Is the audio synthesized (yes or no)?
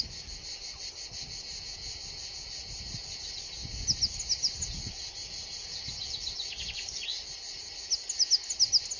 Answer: no